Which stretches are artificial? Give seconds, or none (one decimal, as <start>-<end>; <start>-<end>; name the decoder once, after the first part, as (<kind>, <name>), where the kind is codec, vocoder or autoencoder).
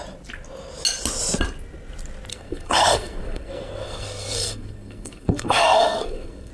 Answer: 2.3-6.5 (codec, SNAC)